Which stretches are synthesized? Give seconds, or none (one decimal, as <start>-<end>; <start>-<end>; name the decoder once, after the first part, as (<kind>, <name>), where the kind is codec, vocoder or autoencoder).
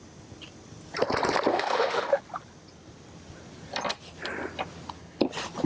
1.5-2.2 (autoencoder, DAC-VAE)